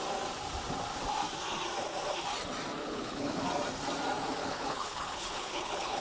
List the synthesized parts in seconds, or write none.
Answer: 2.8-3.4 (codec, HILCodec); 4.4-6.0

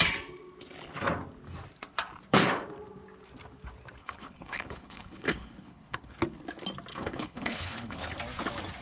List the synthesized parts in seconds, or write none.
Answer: 4.0-6.2 (codec, HILCodec); 6.9-8.1

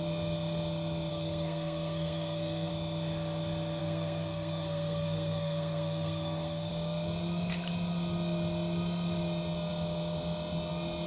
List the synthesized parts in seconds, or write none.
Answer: 1.1-2.7 (codec, SNAC); 3.8-6.7

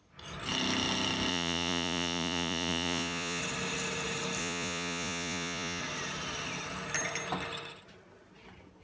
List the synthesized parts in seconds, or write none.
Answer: 1.3-3.4 (vocoder, Vocos); 4.4-5.8

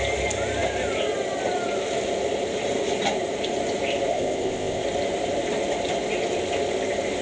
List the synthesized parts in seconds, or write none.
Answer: 4.1-4.8 (codec, ZipCodec)

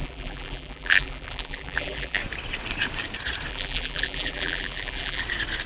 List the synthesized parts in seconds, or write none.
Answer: 0.0-2.2 (vocoder, BigVGAN v2); 3.5-5.2